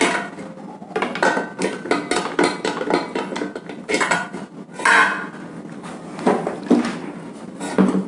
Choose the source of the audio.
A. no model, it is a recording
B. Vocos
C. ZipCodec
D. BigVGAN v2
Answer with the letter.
A